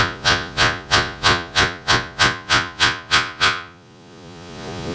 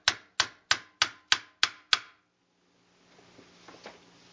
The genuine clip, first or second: second